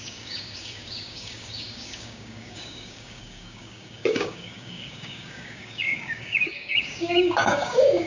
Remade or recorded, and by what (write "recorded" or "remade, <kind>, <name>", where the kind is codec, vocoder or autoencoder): remade, codec, DAC